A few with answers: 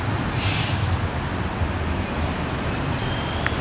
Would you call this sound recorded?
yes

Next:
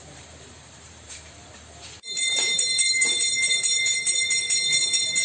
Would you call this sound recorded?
no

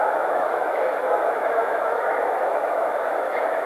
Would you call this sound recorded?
no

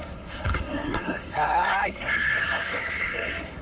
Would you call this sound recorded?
no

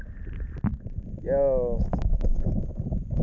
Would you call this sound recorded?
yes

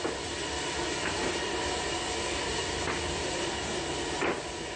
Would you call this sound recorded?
yes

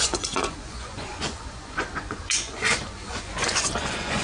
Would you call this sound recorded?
no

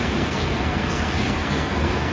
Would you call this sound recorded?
no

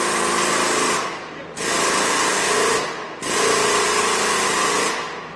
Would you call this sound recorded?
yes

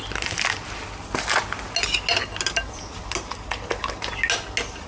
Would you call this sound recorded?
yes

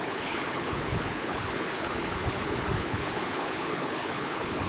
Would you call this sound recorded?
no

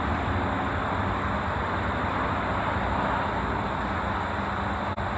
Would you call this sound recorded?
yes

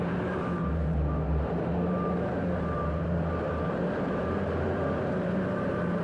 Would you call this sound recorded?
no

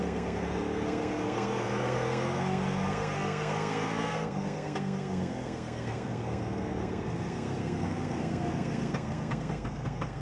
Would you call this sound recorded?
no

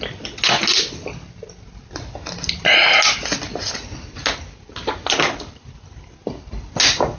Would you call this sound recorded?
yes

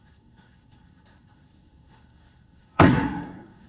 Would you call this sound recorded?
no